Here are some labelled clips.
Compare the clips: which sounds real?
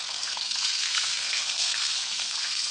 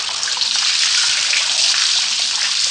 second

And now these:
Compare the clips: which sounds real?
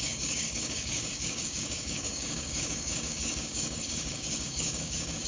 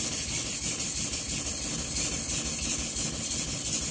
second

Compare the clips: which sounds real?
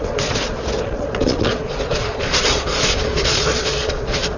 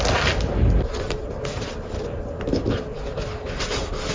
second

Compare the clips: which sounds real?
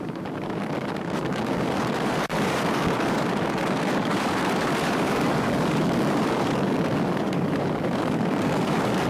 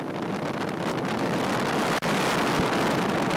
second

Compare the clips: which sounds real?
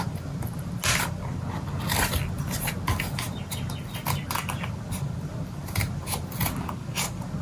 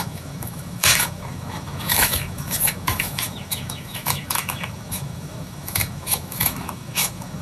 first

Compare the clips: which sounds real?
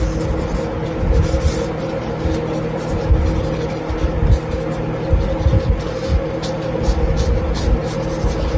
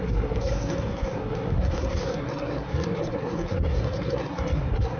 first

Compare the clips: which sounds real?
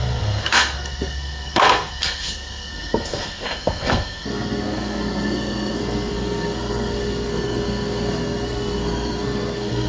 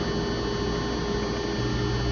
second